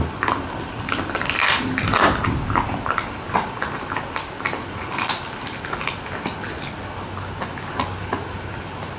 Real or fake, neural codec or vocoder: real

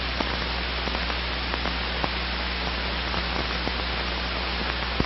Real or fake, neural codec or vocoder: real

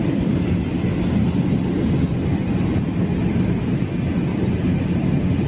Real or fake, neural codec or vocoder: real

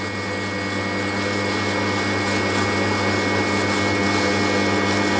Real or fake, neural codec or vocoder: real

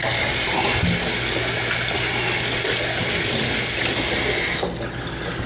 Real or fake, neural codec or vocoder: real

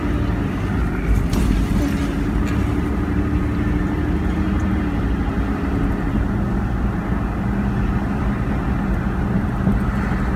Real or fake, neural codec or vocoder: real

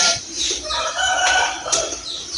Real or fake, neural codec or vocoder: fake, vocoder, BigVGAN v2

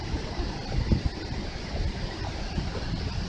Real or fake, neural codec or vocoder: fake, vocoder, BigVGAN v2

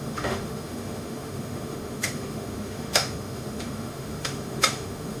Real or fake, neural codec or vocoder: fake, autoencoder, DAC-VAE